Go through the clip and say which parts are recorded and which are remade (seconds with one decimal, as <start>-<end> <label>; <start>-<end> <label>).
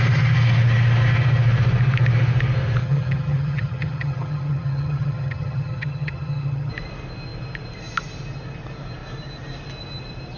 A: 0.0-2.8 recorded; 2.8-6.7 remade; 6.7-10.4 recorded